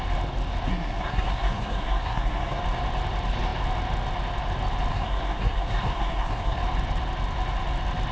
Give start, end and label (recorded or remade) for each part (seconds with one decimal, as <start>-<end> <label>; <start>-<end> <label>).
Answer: 0.0-0.7 recorded; 0.7-2.6 remade; 2.6-4.9 recorded; 4.9-6.6 remade; 6.6-8.1 recorded